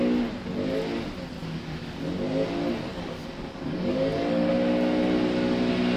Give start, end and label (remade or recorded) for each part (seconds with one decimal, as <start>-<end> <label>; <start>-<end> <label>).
0.0-1.4 recorded; 1.4-2.0 remade; 2.0-2.9 recorded; 2.9-4.5 remade; 4.5-6.0 recorded